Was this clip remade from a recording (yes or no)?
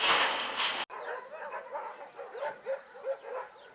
no